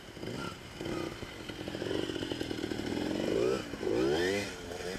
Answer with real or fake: real